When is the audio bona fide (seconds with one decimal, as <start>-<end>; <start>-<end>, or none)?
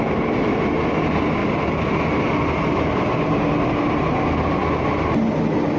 0.0-5.8